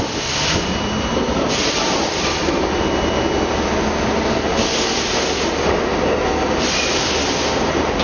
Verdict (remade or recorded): recorded